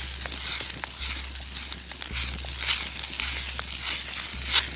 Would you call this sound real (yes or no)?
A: yes